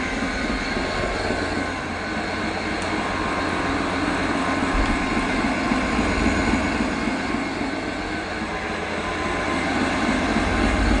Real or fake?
real